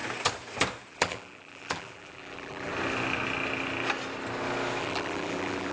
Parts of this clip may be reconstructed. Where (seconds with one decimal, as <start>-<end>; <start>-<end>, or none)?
0.9-2.7; 4.8-5.7